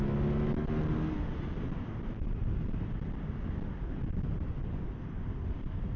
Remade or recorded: recorded